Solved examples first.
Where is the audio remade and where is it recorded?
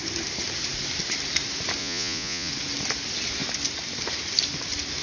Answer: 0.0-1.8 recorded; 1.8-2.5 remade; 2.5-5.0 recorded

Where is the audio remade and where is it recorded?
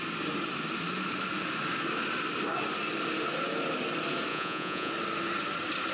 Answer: 0.0-4.3 recorded; 4.3-4.9 remade; 4.9-5.9 recorded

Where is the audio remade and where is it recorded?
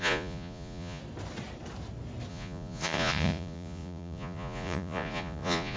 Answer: 0.0-1.0 remade; 1.0-2.3 recorded; 2.3-5.8 remade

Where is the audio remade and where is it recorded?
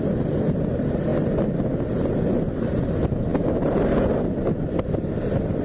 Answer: 0.0-5.6 recorded